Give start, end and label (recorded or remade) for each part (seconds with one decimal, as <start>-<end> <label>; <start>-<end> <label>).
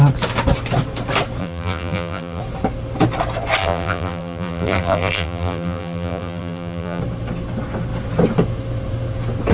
0.0-1.4 recorded; 1.4-2.4 remade; 2.4-3.6 recorded; 3.6-7.0 remade; 7.0-9.5 recorded